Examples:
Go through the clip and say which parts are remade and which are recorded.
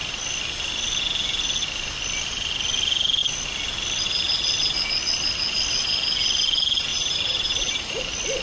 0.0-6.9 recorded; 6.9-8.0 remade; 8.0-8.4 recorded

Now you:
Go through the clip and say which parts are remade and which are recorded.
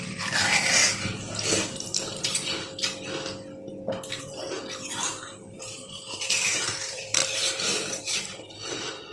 0.0-0.8 remade; 0.8-4.2 recorded; 4.2-7.2 remade; 7.2-8.0 recorded; 8.0-9.1 remade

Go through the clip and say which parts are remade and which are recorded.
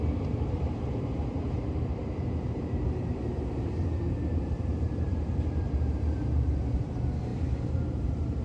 0.0-8.4 remade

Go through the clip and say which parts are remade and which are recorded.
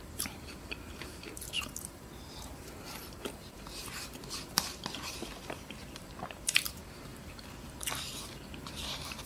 0.0-7.1 remade; 7.1-7.9 recorded; 7.9-9.3 remade